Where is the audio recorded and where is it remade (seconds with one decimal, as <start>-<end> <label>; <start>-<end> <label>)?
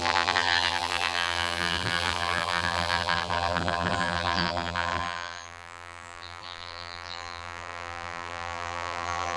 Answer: 0.0-9.4 remade